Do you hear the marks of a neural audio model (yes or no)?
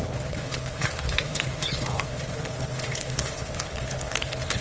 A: yes